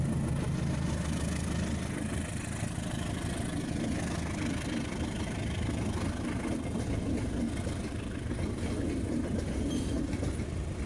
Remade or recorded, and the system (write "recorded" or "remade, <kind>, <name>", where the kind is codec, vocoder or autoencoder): recorded